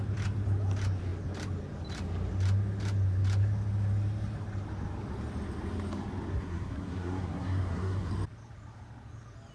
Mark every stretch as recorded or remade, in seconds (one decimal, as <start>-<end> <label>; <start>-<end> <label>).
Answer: 0.0-6.3 recorded; 6.3-8.1 remade; 8.1-9.5 recorded